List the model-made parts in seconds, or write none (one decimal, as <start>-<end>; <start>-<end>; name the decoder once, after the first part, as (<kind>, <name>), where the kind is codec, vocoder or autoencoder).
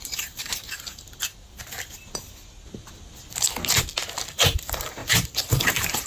0.0-1.3 (vocoder, BigVGAN v2); 4.2-6.1